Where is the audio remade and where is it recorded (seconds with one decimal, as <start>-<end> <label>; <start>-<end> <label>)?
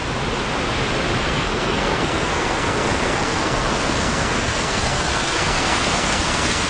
0.0-1.2 recorded; 1.2-6.7 remade